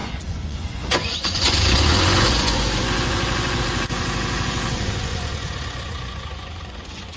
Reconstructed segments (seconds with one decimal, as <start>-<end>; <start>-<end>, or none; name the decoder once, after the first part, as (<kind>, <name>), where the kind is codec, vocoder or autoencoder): 0.0-7.2 (vocoder, Vocos)